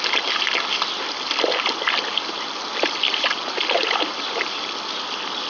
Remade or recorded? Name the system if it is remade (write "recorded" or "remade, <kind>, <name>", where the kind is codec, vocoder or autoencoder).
recorded